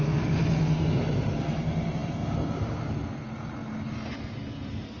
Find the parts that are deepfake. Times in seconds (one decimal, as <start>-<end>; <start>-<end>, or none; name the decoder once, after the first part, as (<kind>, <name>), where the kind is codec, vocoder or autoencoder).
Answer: none